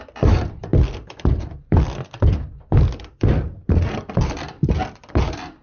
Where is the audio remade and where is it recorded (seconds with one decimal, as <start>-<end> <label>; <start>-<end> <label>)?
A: 0.0-0.7 remade; 0.7-4.1 recorded; 4.1-5.6 remade